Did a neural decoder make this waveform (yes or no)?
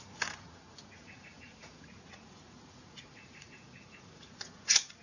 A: yes